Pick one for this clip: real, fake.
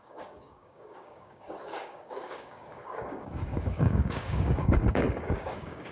fake